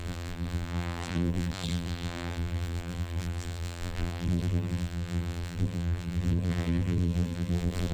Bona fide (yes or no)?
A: no